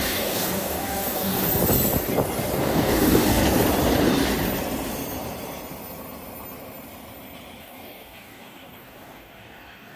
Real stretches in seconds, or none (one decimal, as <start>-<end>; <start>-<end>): 1.5-2.6; 3.4-7.6